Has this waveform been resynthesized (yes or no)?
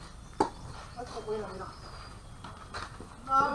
no